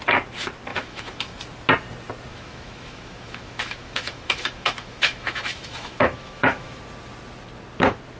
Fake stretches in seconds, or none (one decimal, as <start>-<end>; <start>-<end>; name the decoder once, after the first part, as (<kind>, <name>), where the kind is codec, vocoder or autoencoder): 0.7-1.4 (autoencoder, DAC-VAE); 2.3-6.8